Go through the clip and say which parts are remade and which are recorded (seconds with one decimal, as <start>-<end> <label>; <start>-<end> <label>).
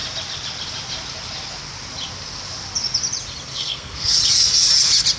0.0-3.5 recorded; 3.5-4.1 remade; 4.1-5.2 recorded